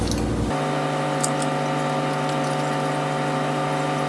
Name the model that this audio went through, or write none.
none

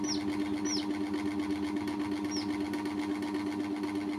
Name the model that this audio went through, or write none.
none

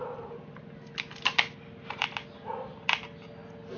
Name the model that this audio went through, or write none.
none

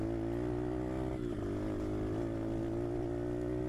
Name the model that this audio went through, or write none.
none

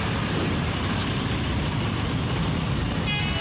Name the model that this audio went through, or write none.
none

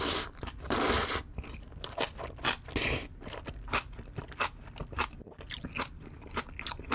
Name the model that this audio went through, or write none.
none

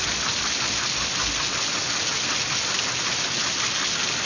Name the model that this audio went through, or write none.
none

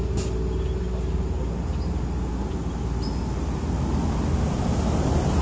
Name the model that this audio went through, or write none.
none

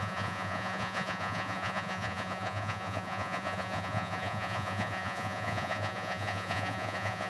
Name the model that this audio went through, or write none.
vocoder, Vocos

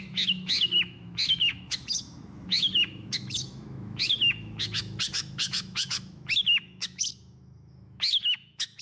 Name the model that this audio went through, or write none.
autoencoder, DAC-VAE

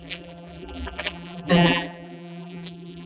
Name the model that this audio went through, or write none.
vocoder, BigVGAN v2